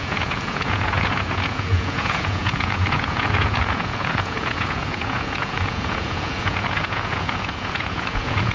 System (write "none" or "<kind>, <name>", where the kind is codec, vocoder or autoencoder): vocoder, Vocos